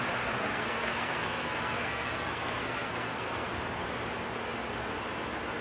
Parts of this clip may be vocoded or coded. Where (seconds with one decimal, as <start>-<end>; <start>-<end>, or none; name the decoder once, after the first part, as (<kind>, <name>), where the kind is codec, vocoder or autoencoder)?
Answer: 0.4-3.5 (codec, SNAC)